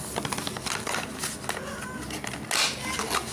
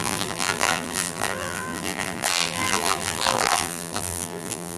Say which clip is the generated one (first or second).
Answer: second